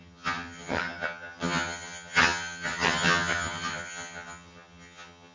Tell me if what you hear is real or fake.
fake